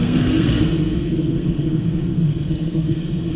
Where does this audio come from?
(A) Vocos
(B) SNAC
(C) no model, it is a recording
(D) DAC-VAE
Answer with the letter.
B